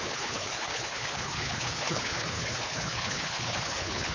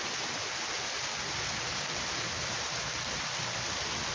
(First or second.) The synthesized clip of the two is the first